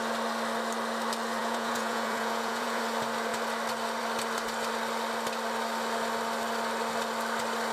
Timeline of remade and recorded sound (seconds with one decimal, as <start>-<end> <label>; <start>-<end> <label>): 0.0-1.4 recorded; 1.4-2.8 remade; 2.8-7.7 recorded